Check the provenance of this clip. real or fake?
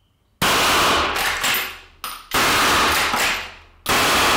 real